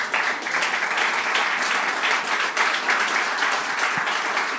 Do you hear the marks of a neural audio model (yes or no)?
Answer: no